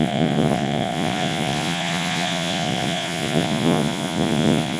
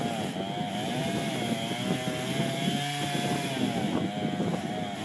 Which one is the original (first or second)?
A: second